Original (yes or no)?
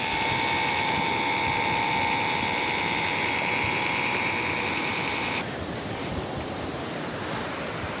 no